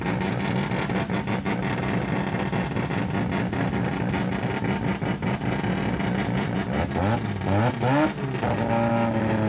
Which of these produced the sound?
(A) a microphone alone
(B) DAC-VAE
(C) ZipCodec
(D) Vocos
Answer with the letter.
A